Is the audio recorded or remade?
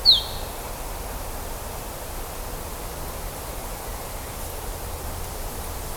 recorded